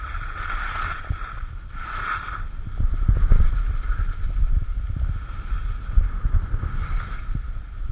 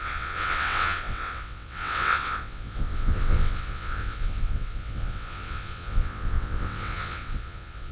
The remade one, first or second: second